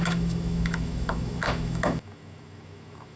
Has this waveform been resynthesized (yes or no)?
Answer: yes